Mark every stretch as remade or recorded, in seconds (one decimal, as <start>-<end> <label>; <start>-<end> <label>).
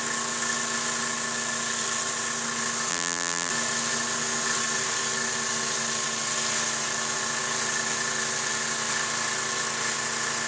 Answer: 0.0-2.9 recorded; 2.9-3.5 remade; 3.5-10.5 recorded